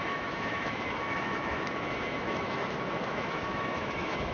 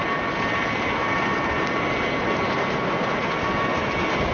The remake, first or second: first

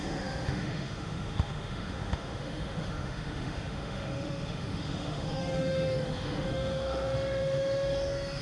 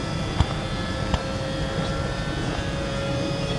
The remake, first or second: first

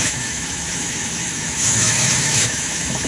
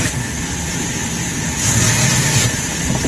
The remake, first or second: first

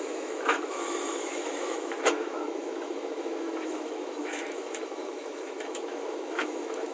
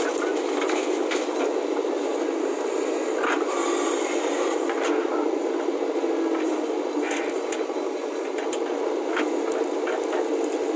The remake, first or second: first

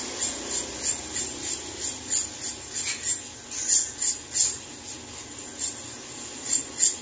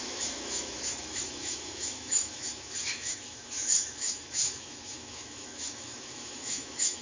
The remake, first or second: second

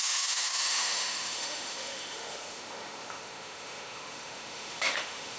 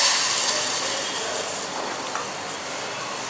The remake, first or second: first